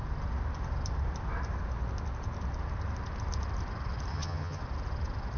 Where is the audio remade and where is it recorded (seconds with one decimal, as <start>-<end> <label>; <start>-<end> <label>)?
0.0-4.1 recorded; 4.1-4.6 remade; 4.6-5.4 recorded